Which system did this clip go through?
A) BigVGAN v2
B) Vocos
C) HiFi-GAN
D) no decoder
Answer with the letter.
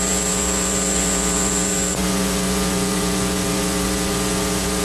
B